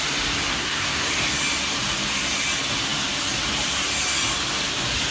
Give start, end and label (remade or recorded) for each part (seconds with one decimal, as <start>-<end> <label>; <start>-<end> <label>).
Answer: 0.0-0.5 recorded; 0.5-1.1 remade; 1.1-5.1 recorded